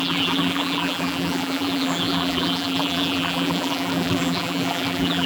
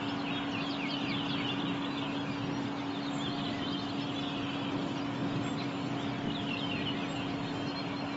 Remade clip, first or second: first